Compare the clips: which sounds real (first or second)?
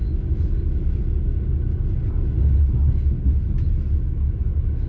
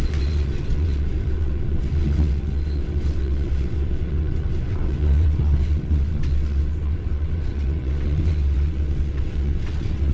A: first